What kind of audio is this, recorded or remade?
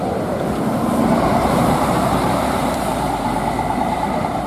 remade